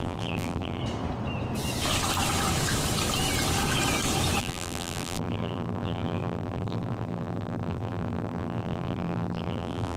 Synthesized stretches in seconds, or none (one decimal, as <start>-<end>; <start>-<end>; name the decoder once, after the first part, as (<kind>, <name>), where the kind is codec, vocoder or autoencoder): 0.0-0.8 (vocoder, BigVGAN v2); 4.4-10.0